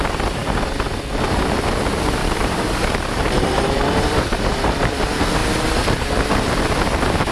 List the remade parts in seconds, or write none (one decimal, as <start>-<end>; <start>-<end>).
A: 2.2-5.0; 5.4-6.2